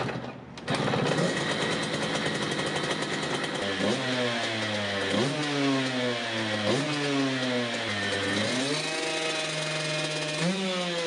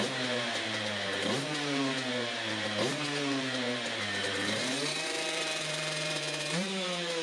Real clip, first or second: first